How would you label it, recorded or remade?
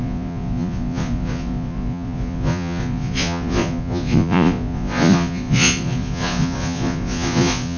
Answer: remade